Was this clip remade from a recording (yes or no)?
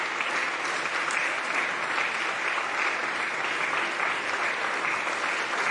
no